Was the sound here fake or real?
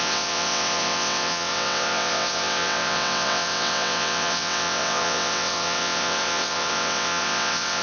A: fake